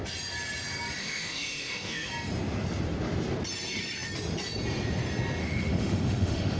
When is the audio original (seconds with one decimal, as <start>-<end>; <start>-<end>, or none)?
0.0-1.0; 2.1-5.4